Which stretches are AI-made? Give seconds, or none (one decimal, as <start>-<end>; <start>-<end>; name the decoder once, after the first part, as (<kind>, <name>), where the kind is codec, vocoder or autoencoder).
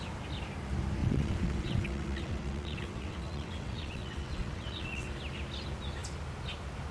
1.0-5.1 (vocoder, WaveNeXt)